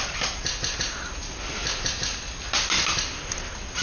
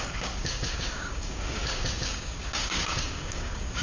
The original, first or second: first